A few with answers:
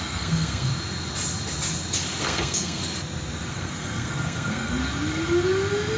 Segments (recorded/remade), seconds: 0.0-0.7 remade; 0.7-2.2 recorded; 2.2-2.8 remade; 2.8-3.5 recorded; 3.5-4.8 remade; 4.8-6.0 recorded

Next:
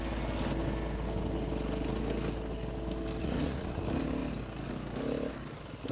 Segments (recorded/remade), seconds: 0.0-3.2 recorded; 3.2-3.8 remade; 3.8-5.9 recorded

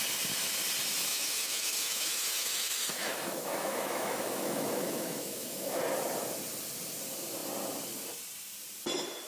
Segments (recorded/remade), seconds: 0.0-1.1 recorded; 1.1-5.8 remade; 5.8-9.3 recorded

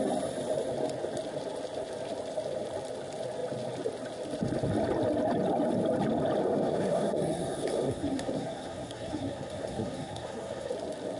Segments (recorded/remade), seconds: 0.0-6.4 recorded; 6.4-10.7 remade; 10.7-11.2 recorded

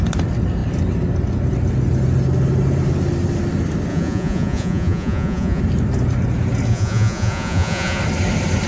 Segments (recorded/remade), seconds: 0.0-3.9 recorded; 3.9-5.6 remade; 5.6-6.7 recorded; 6.7-8.0 remade; 8.0-8.7 recorded

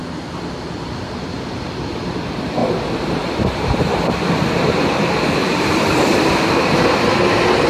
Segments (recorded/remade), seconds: 0.0-2.6 recorded; 2.6-7.1 remade; 7.1-7.7 recorded

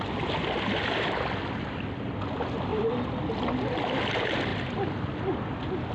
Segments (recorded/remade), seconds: 0.0-2.7 recorded; 2.7-3.3 remade; 3.3-5.9 recorded

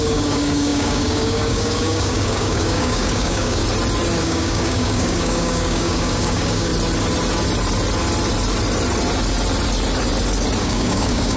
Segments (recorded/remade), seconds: 0.0-3.6 remade; 3.6-4.2 recorded; 4.2-6.7 remade; 6.7-10.6 recorded; 10.6-11.4 remade